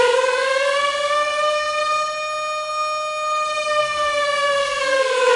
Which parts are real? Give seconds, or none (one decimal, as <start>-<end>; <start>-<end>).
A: 1.8-3.8